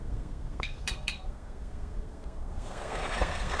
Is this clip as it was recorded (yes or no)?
no